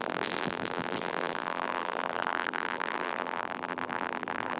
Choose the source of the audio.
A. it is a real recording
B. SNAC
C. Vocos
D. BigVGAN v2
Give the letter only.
D